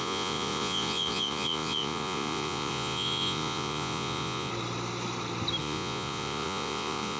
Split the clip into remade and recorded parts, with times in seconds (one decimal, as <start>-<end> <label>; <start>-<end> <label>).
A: 0.0-4.5 remade; 4.5-5.6 recorded; 5.6-7.2 remade

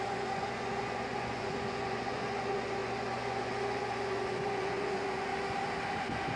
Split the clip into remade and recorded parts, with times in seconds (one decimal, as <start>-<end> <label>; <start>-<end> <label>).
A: 0.0-5.3 remade; 5.3-6.0 recorded; 6.0-6.4 remade